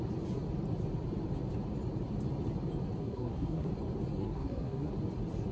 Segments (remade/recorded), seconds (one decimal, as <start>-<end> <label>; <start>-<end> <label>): 0.0-3.0 recorded; 3.0-3.7 remade; 3.7-4.2 recorded; 4.2-4.9 remade; 4.9-5.5 recorded